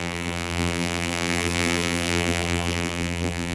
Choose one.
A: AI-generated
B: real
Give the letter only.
A